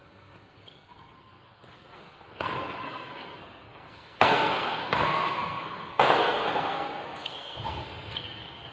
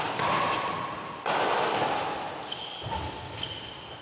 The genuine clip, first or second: second